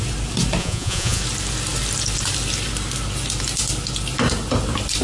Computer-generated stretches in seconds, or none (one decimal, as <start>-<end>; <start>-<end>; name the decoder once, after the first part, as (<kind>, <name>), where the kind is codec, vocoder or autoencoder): 0.6-1.2 (vocoder, Vocos)